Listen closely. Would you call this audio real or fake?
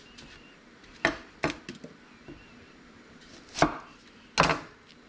real